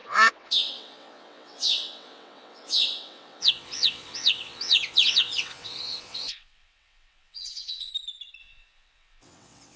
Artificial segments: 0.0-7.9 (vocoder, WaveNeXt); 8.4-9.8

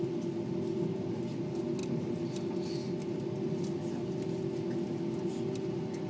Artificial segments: none

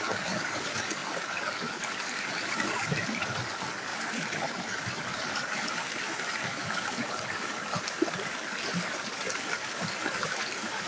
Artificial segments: 0.0-10.9 (codec, DAC)

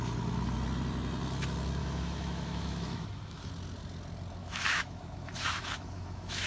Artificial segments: 1.8-3.5 (autoencoder, DAC-VAE); 4.4-6.5

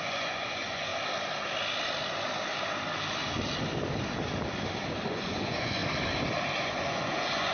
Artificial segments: 0.0-0.9 (vocoder, Vocos); 5.1-5.8; 6.6-7.5

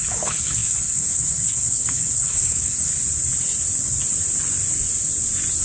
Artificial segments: 0.0-2.9 (codec, HILCodec)